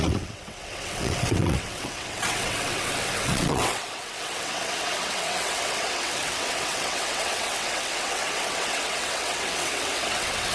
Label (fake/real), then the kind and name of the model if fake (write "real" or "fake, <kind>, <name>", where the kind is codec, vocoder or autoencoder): fake, vocoder, WaveNeXt